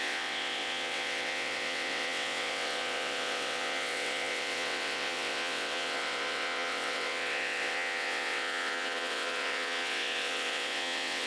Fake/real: fake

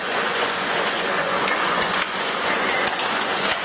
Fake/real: fake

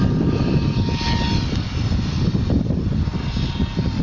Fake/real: real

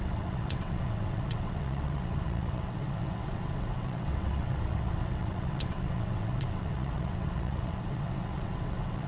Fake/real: fake